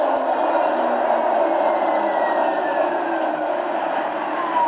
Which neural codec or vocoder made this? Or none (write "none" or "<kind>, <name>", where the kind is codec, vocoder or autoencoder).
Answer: none